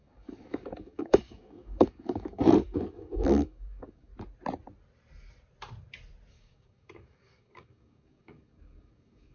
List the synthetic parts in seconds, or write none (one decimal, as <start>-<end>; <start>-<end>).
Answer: 0.0-4.1; 6.3-9.3